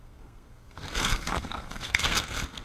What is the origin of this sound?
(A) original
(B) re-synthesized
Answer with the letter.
B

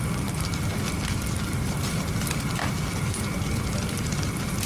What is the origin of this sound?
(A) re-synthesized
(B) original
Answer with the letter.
B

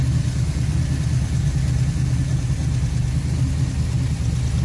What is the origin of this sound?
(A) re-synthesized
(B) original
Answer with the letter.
B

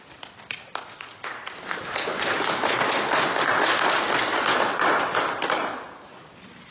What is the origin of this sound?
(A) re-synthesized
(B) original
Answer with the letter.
A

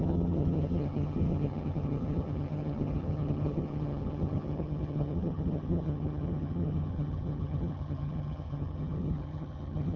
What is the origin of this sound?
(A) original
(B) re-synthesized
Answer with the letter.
B